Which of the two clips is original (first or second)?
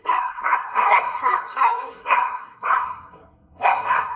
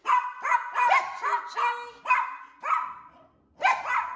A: second